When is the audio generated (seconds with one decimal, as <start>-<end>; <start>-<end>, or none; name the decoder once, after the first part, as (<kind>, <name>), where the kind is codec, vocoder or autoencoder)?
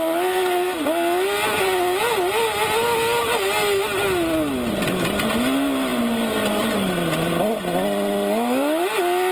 none